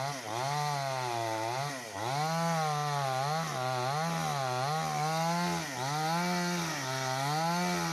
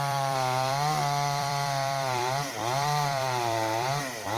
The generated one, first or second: second